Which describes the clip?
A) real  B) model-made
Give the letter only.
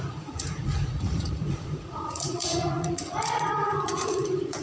B